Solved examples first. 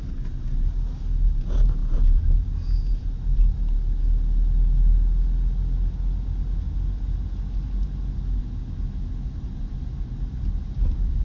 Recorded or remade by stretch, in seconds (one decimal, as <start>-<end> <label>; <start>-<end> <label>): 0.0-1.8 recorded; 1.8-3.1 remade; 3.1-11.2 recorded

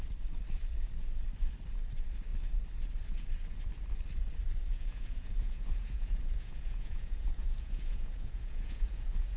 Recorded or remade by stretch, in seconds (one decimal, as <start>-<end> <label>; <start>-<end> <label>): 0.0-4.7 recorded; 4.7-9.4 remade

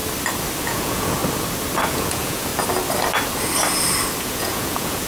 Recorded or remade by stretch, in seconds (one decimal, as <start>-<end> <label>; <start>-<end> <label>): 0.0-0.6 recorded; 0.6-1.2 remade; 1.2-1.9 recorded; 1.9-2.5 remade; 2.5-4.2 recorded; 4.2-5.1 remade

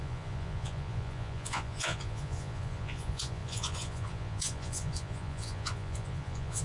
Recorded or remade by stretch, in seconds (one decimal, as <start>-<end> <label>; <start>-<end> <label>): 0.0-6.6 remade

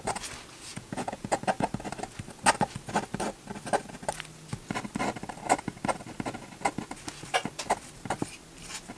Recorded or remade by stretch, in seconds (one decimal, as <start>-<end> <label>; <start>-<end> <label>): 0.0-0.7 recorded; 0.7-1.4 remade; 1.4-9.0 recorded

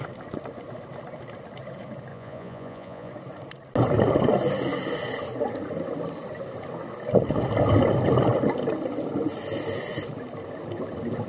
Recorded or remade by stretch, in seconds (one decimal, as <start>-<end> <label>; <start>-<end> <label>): 0.0-2.1 recorded; 2.1-3.1 remade; 3.1-11.3 recorded

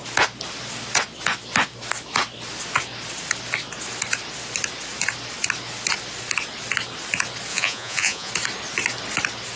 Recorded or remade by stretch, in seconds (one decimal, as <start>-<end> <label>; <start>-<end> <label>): 0.0-7.5 recorded; 7.5-8.3 remade; 8.3-9.6 recorded

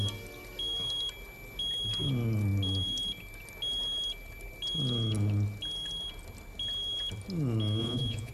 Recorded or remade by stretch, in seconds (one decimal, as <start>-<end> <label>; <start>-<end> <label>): 0.0-7.8 recorded; 7.8-8.3 remade